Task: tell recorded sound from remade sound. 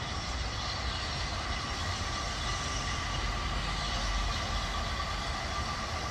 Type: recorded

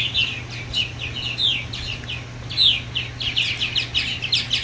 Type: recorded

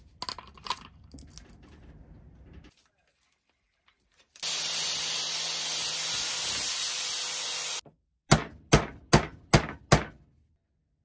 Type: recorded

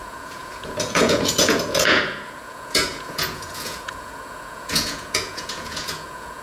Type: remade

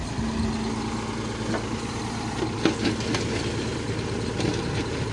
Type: recorded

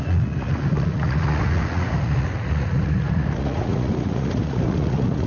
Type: remade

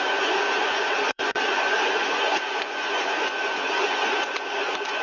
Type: remade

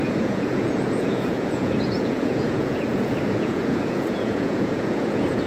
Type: remade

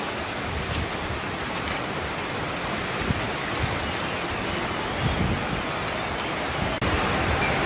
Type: recorded